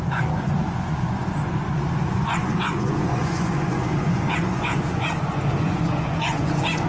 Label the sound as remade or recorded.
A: remade